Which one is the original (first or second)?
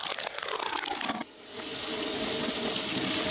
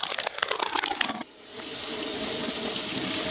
first